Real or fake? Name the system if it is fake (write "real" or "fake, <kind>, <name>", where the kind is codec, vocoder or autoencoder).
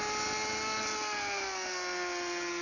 real